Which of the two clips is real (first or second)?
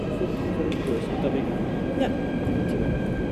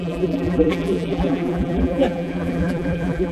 first